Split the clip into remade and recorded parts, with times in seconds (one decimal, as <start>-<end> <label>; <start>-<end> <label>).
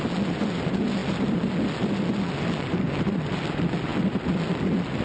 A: 0.0-5.0 recorded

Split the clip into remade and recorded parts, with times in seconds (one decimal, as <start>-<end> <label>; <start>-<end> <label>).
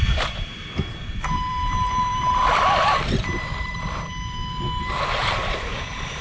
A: 0.0-6.2 remade